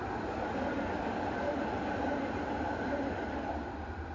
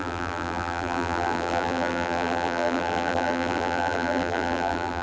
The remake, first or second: second